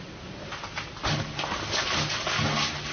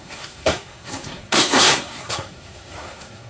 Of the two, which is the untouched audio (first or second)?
first